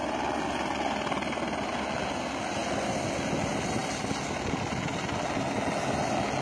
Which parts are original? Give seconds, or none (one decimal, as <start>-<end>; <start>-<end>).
0.0-6.4